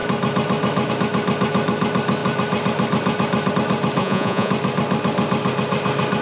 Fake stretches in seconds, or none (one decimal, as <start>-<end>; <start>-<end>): 4.0-4.5